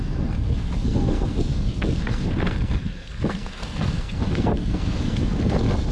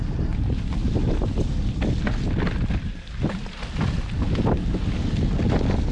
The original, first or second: second